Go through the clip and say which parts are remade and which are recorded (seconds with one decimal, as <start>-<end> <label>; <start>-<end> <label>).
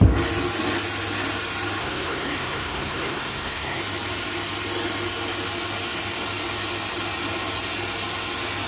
0.0-1.8 recorded; 1.8-3.8 remade; 3.8-8.7 recorded